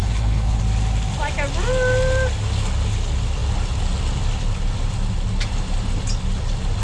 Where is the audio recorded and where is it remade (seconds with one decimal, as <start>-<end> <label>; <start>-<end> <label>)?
0.0-0.6 remade; 0.6-6.8 recorded